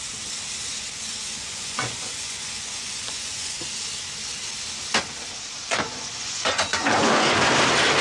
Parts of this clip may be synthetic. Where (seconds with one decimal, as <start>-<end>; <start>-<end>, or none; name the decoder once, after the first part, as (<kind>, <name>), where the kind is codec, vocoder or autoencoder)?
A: 0.7-3.6 (vocoder, Vocos); 5.6-7.5